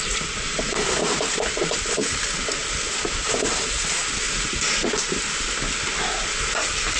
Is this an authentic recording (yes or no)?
yes